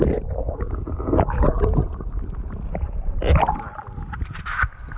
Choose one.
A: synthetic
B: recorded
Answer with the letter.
B